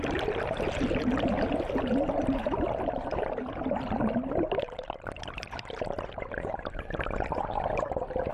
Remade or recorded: remade